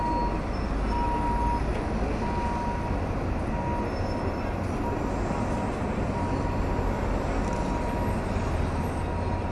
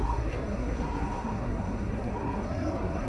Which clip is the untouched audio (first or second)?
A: first